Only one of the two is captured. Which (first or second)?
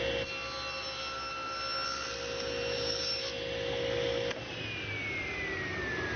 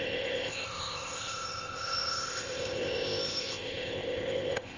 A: first